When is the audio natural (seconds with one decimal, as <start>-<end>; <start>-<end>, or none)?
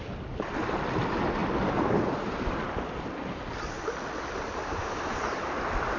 0.0-6.0